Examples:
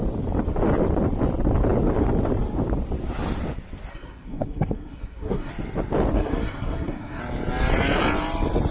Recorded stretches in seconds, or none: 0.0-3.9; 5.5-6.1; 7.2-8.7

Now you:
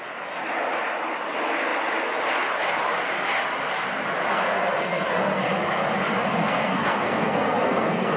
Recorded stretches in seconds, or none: 0.0-4.3; 5.5-6.4

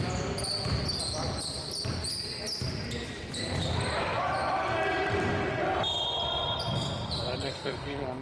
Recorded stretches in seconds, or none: 0.0-7.4

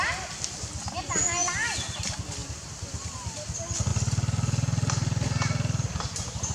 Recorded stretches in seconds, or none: 0.0-6.5

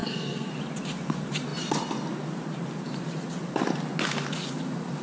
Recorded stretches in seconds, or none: 0.5-5.0